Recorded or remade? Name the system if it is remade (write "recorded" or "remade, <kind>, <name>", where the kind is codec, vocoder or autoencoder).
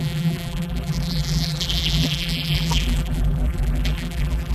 remade, vocoder, BigVGAN v2